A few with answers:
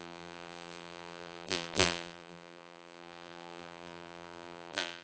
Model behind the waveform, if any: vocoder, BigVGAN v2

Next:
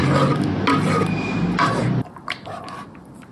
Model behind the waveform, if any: none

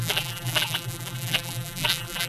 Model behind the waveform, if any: vocoder, BigVGAN v2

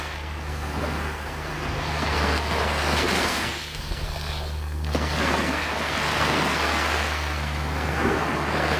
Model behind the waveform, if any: codec, SNAC